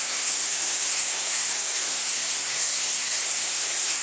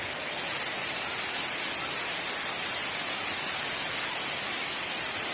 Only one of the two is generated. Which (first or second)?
first